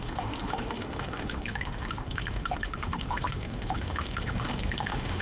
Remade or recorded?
remade